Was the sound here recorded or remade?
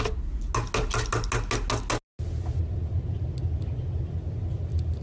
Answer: recorded